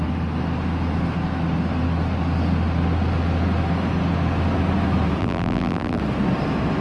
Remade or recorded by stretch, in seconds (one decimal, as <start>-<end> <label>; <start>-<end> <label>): 0.0-5.2 recorded; 5.2-6.0 remade; 6.0-6.8 recorded